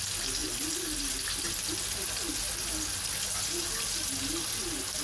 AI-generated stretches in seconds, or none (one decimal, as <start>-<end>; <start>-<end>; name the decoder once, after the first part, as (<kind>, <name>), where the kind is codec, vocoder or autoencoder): none